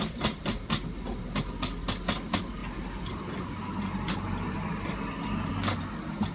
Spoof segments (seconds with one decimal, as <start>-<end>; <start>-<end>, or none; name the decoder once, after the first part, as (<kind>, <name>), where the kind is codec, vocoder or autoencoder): 2.6-5.5 (vocoder, BigVGAN v2)